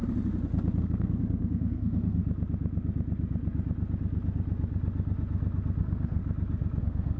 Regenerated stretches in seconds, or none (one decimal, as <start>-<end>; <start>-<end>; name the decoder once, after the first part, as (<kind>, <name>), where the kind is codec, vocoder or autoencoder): 0.8-2.2 (codec, SNAC); 5.8-6.2; 6.8-7.2